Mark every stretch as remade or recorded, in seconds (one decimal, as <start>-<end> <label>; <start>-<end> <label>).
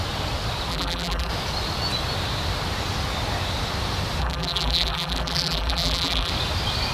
0.0-0.7 recorded; 0.7-1.3 remade; 1.3-4.2 recorded; 4.2-6.3 remade; 6.3-6.9 recorded